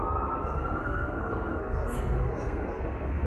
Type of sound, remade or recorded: remade